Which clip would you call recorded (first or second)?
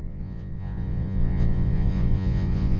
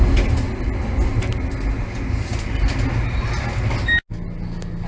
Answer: second